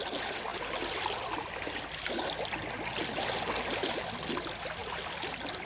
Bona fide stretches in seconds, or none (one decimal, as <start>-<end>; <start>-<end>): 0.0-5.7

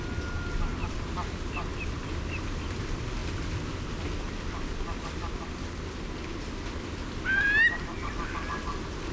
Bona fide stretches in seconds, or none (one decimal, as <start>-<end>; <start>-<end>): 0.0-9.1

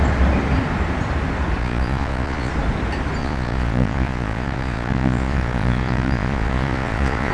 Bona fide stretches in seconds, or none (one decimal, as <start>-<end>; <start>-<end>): 0.0-1.6; 2.5-3.2

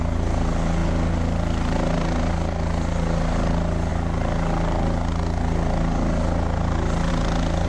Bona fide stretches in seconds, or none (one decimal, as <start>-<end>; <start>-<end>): 0.0-7.7